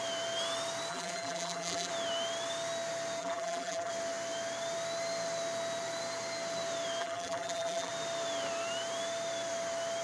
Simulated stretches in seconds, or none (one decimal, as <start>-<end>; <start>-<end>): 0.9-1.9; 3.2-3.9; 7.0-7.9